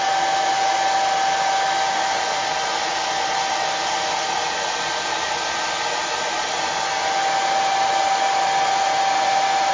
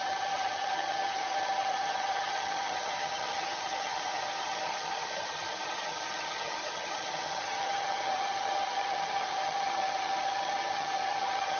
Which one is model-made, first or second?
second